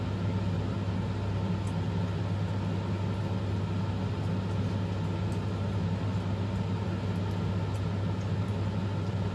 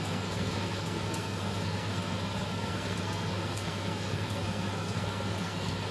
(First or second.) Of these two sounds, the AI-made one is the second